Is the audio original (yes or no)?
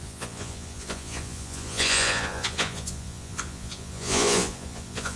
no